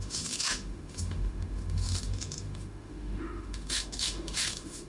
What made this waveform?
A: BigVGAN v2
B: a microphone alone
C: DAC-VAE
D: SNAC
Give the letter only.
C